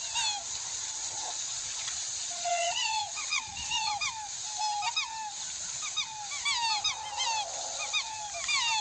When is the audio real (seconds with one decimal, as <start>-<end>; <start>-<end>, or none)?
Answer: 0.0-1.4; 3.9-8.8